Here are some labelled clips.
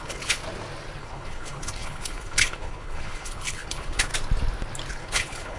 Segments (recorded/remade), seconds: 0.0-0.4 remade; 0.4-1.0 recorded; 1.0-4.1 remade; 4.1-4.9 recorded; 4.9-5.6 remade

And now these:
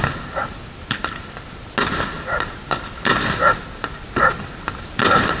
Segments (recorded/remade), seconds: 0.0-5.4 recorded

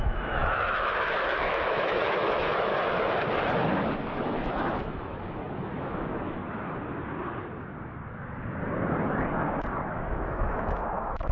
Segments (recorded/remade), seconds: 0.0-2.7 remade; 2.7-4.2 recorded; 4.2-6.4 remade; 6.4-9.9 recorded; 9.9-11.3 remade

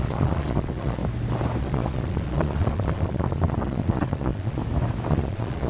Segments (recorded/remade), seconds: 0.0-1.0 remade; 1.0-1.6 recorded; 1.6-4.6 remade; 4.6-5.1 recorded; 5.1-5.7 remade

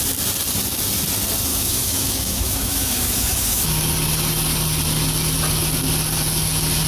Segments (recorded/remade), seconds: 0.0-1.5 recorded; 1.5-3.8 remade; 3.8-6.9 recorded

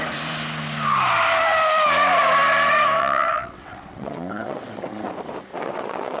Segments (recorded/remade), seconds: 0.0-3.0 recorded; 3.0-5.1 remade; 5.1-5.5 recorded; 5.5-6.2 remade

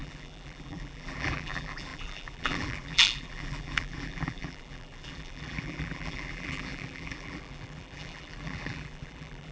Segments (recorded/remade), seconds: 0.0-9.5 remade

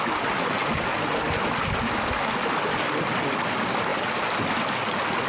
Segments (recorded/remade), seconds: 0.0-5.3 recorded